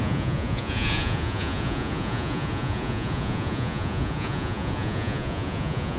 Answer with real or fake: fake